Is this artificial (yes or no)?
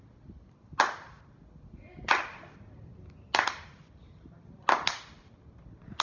no